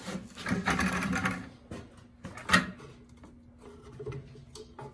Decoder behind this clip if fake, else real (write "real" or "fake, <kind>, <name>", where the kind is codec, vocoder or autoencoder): real